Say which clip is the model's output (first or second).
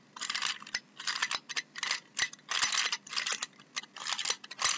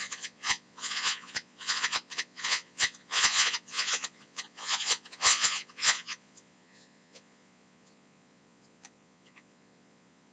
second